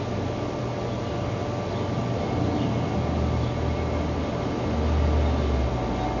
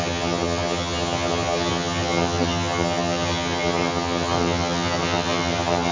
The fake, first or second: second